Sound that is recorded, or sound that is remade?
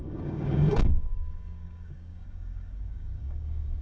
remade